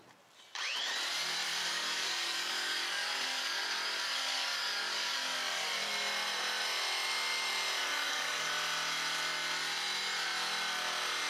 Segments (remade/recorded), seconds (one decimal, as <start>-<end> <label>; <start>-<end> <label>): 0.0-1.7 recorded; 1.7-5.9 remade; 5.9-7.8 recorded; 7.8-8.5 remade; 8.5-11.3 recorded